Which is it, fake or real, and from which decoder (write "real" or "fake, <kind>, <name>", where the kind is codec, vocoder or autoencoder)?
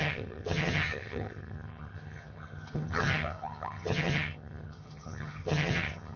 fake, vocoder, HiFi-GAN